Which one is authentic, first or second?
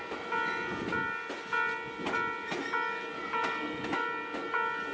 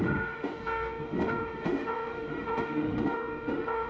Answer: first